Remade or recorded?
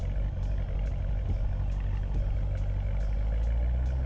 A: recorded